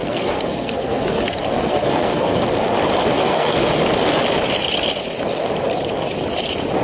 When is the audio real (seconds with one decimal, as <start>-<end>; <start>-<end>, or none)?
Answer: 2.4-3.1; 3.8-6.8